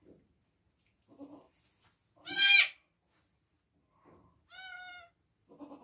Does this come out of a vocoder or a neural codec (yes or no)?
no